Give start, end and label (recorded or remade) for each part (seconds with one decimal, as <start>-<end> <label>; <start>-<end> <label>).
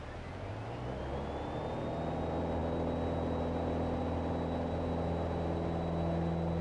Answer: 0.0-6.6 recorded